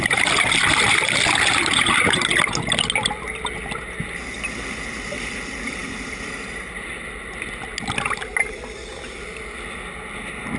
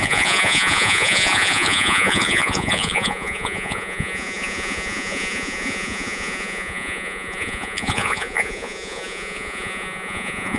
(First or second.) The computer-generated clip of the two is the second